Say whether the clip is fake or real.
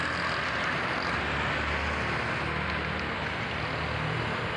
real